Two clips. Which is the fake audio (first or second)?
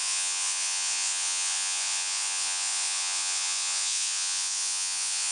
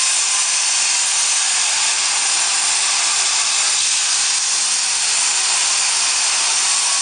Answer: first